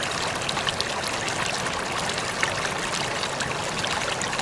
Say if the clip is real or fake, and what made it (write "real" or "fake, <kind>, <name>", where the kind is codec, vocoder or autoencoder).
real